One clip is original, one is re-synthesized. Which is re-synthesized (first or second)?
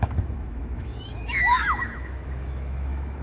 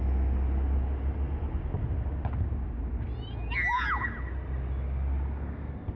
first